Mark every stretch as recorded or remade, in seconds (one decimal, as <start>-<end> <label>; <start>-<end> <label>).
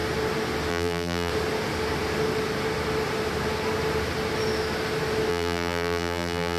0.0-0.7 recorded; 0.7-1.3 remade; 1.3-5.3 recorded; 5.3-6.6 remade